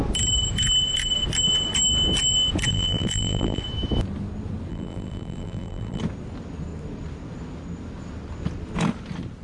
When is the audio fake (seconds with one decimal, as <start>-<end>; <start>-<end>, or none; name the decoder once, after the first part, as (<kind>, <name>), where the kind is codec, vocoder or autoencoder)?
2.7-3.6 (vocoder, BigVGAN v2); 4.7-6.0

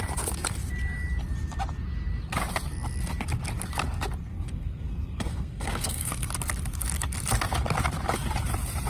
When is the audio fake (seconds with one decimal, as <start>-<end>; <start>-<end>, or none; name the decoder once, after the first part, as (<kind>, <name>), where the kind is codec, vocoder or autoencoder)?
4.3-6.3 (codec, SNAC)

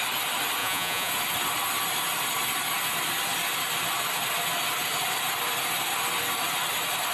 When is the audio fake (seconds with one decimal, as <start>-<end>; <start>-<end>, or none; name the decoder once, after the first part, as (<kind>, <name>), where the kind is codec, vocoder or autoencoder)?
0.6-1.1 (vocoder, Vocos)

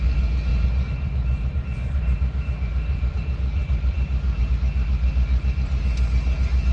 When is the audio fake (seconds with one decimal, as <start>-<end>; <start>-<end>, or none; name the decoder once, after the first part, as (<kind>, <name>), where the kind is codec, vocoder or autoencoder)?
0.5-4.5 (vocoder, BigVGAN v2)